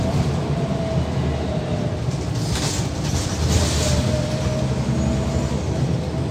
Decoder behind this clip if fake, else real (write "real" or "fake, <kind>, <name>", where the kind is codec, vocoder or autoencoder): real